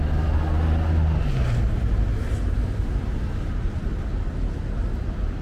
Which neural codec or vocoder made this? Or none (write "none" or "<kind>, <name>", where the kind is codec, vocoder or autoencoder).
none